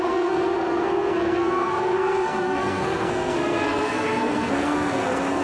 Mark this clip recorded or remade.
remade